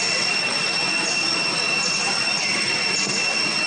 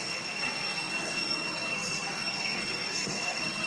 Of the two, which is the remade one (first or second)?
second